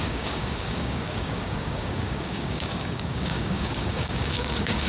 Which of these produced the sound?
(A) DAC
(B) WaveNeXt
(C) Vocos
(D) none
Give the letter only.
A